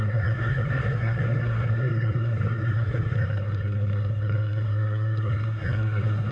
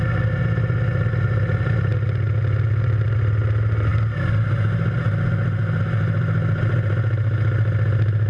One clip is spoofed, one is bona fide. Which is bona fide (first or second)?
second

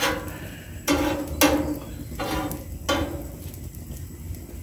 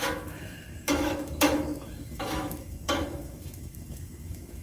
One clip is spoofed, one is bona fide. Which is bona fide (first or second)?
first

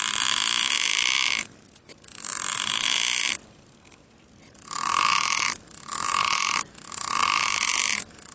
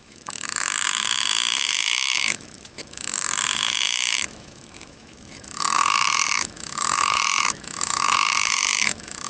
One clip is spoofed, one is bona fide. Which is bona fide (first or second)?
first